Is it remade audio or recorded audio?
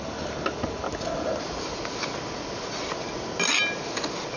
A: recorded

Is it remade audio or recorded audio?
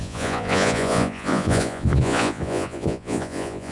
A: remade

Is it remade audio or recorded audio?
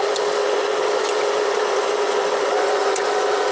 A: remade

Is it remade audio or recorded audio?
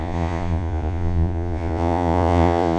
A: remade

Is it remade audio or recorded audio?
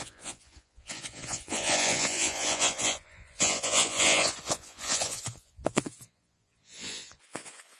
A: remade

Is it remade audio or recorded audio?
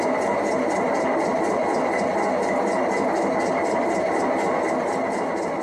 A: recorded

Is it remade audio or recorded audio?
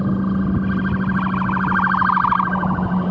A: recorded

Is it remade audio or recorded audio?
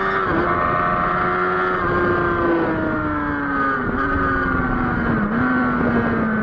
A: recorded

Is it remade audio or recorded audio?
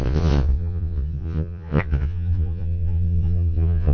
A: remade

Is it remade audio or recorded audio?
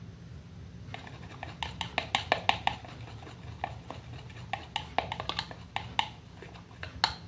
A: recorded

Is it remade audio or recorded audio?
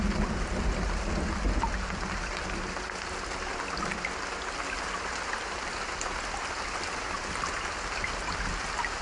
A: recorded